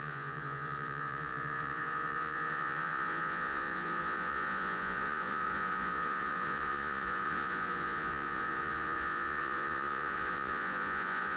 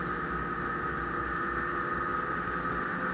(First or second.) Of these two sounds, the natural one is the second